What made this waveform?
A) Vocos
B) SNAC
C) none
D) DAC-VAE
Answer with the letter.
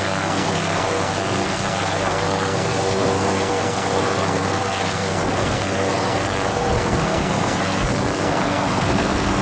B